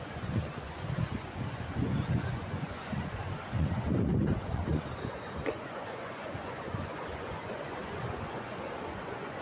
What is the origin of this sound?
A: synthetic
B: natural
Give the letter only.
A